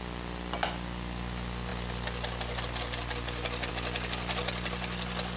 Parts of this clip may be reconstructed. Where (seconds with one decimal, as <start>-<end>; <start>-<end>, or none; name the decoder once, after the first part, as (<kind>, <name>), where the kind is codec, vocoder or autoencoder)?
none